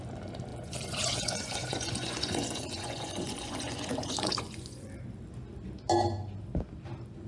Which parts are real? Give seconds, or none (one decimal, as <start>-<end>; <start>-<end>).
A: 0.0-0.5; 4.9-7.3